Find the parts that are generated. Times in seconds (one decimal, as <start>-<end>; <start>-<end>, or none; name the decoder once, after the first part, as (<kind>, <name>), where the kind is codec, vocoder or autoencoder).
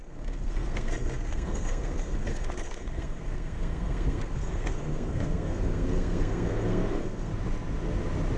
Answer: 0.0-7.3 (codec, SNAC)